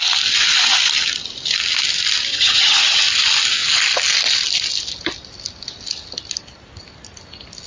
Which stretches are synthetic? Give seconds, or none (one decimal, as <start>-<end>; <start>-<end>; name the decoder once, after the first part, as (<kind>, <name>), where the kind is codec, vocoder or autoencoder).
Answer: 2.3-3.0 (vocoder, HiFi-GAN)